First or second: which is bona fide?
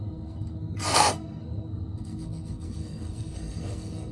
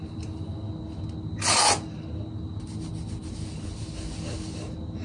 second